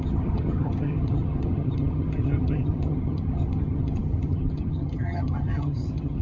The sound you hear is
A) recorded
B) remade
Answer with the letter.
B